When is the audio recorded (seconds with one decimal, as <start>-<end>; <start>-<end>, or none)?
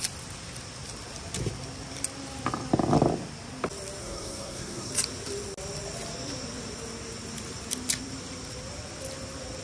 0.0-4.0; 4.9-9.6